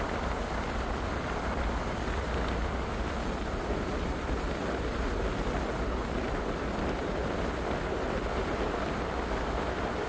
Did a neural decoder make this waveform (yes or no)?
no